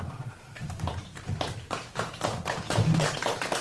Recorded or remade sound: remade